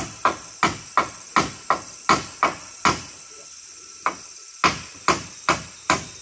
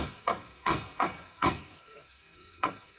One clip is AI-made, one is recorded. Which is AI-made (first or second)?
second